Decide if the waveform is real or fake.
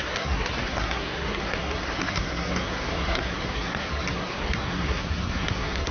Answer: fake